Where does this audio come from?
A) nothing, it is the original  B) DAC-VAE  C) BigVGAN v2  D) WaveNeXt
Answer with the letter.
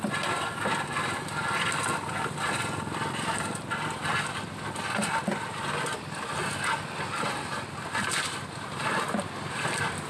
A